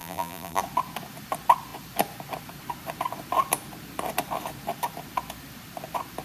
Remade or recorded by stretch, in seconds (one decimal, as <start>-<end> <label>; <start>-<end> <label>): 0.0-0.6 remade; 0.6-6.2 recorded